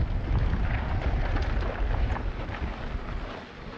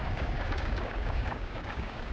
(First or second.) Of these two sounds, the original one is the first